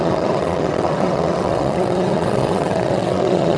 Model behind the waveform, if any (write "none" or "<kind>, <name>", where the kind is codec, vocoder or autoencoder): vocoder, WaveNeXt